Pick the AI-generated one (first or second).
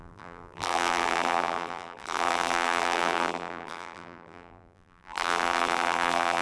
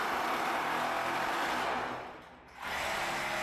first